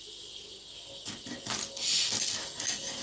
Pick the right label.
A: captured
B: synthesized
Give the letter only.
A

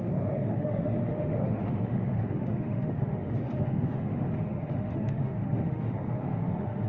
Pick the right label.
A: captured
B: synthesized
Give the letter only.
B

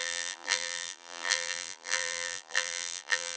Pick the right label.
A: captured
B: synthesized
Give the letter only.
B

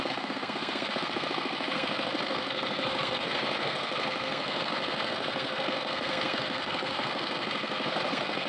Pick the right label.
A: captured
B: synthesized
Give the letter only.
B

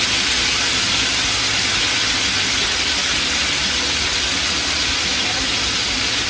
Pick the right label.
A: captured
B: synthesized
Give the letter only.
A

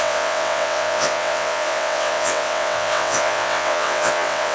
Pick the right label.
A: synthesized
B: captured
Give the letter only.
A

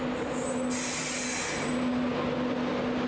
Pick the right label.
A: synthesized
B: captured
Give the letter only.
B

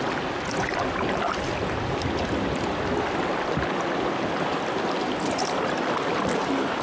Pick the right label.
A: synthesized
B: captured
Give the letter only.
B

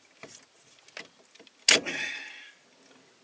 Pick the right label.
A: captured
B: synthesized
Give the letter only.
A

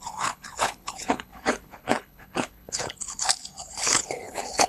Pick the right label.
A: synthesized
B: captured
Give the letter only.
A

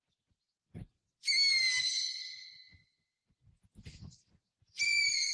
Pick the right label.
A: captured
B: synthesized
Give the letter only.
A